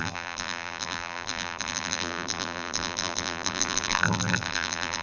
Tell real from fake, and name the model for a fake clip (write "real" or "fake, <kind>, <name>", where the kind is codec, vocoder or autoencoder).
fake, vocoder, BigVGAN v2